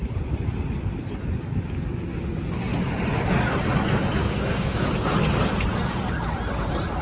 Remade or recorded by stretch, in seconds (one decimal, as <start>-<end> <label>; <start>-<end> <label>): 0.0-4.2 recorded; 4.2-4.9 remade; 4.9-7.0 recorded

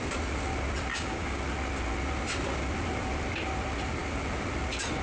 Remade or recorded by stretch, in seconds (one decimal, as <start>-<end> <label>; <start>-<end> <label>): 0.0-0.9 recorded; 0.9-1.4 remade; 1.4-5.0 recorded

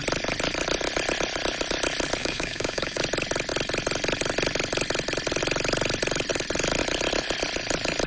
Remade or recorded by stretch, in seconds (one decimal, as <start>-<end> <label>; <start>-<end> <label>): 0.0-2.2 recorded; 2.2-3.0 remade; 3.0-8.1 recorded

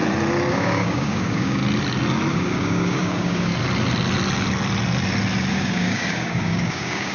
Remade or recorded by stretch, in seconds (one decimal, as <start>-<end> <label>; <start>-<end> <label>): 0.0-0.5 recorded; 0.5-1.6 remade; 1.6-2.3 recorded; 2.3-3.5 remade; 3.5-5.5 recorded; 5.5-7.1 remade

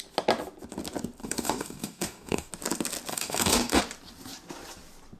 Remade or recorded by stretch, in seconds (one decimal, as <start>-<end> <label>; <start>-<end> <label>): 0.0-1.2 recorded; 1.2-2.5 remade; 2.5-3.1 recorded; 3.1-3.8 remade; 3.8-5.2 recorded

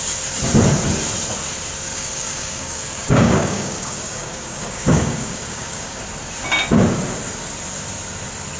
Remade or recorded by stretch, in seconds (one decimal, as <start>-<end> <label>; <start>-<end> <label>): 0.0-1.9 recorded; 1.9-6.0 remade; 6.0-8.6 recorded

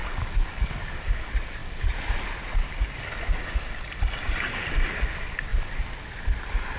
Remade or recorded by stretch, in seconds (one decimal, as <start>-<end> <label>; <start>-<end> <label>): 0.0-1.0 remade; 1.0-6.8 recorded